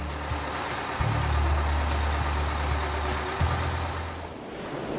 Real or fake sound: real